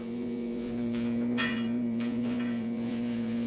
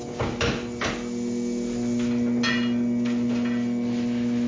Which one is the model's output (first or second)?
first